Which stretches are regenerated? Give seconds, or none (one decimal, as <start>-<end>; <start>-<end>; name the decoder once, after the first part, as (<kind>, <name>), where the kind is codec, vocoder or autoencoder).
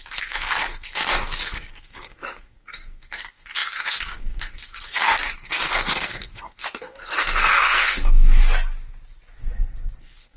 0.0-8.4 (codec, SNAC); 10.0-10.4